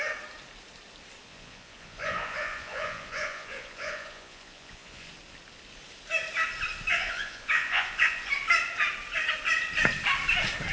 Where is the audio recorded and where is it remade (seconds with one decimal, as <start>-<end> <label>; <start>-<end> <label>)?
0.0-1.3 recorded; 1.3-5.1 remade; 5.1-6.9 recorded; 6.9-8.3 remade; 8.3-10.7 recorded